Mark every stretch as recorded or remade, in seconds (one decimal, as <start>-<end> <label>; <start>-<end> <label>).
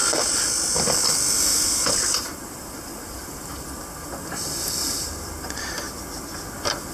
0.0-0.7 remade; 0.7-1.5 recorded; 1.5-5.6 remade; 5.6-6.9 recorded